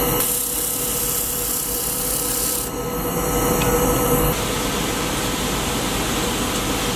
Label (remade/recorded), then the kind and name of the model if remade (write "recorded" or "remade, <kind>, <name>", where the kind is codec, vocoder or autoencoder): recorded